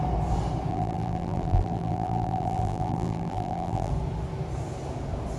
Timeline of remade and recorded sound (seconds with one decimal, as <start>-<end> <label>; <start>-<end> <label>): 0.0-0.7 recorded; 0.7-3.9 remade; 3.9-5.4 recorded